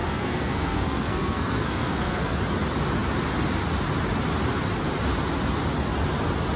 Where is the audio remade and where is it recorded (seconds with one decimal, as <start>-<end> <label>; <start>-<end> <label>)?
0.0-2.4 remade; 2.4-6.6 recorded